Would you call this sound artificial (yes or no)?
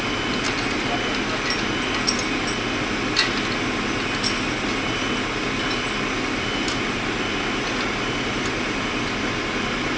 no